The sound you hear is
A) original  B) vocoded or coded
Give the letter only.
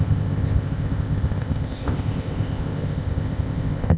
B